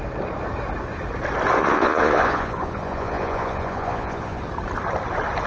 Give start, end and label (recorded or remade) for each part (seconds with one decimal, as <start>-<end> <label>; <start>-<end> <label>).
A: 0.0-1.6 recorded; 1.6-4.4 remade; 4.4-5.5 recorded